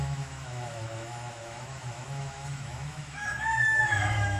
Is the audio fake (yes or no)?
yes